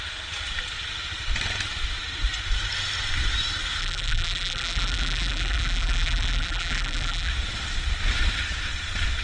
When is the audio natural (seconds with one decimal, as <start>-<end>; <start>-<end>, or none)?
0.0-3.8; 7.3-9.2